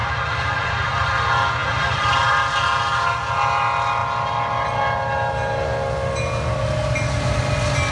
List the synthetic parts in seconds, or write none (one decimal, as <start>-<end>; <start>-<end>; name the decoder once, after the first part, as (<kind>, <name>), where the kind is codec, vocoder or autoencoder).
0.0-1.1 (vocoder, BigVGAN v2); 1.6-2.3